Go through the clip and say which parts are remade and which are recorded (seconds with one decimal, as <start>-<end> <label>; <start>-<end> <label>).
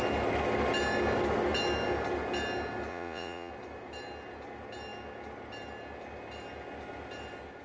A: 0.0-2.9 recorded; 2.9-3.5 remade; 3.5-7.6 recorded